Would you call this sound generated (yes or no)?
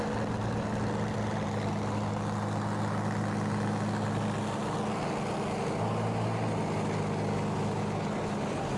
no